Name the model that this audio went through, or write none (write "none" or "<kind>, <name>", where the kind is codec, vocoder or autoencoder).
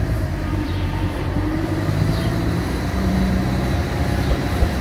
vocoder, BigVGAN v2